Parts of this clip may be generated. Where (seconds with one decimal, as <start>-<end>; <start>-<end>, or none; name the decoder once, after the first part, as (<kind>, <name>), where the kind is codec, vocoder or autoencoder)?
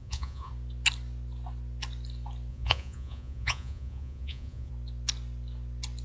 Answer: 0.0-0.5 (vocoder, Vocos); 2.5-4.7